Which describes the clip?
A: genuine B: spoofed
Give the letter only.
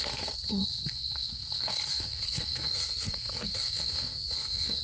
B